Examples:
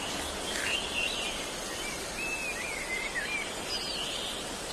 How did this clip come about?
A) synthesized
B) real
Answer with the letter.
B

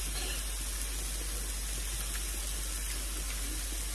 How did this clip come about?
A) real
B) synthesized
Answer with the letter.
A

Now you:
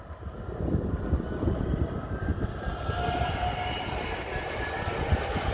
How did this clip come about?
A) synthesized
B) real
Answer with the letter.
B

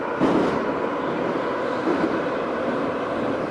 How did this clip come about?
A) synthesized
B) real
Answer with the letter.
B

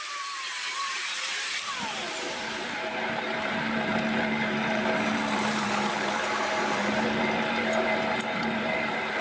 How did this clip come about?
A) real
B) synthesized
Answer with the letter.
B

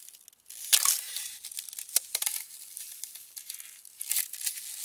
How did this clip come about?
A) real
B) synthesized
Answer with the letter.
A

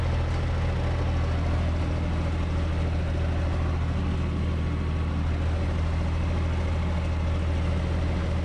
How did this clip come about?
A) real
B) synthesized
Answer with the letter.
A